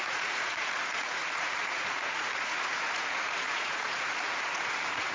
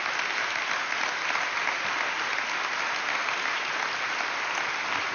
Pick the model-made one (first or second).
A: first